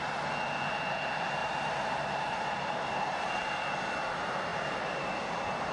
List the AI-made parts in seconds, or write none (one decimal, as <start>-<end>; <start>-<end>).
1.4-3.3; 4.5-5.7